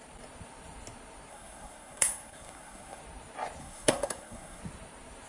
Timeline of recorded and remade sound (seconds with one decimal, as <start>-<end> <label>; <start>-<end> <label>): 0.0-1.3 recorded; 1.3-3.0 remade; 3.0-3.6 recorded; 3.6-4.6 remade; 4.6-5.3 recorded